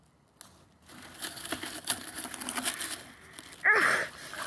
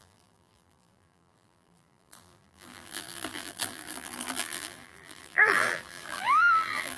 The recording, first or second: first